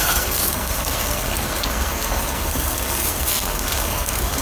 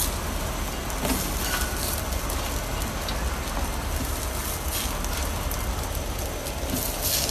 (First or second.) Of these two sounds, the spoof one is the first